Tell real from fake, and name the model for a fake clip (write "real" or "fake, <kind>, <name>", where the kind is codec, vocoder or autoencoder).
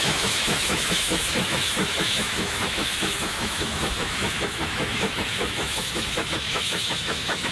fake, autoencoder, DAC-VAE